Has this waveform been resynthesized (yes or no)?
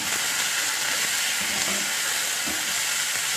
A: no